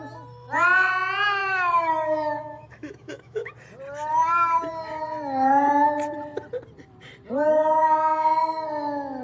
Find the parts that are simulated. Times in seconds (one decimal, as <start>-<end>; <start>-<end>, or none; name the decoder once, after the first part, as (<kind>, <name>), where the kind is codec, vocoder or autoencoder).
1.4-3.5 (autoencoder, DAC-VAE)